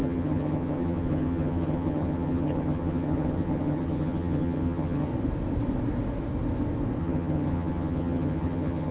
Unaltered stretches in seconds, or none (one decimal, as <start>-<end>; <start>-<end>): 5.1-7.0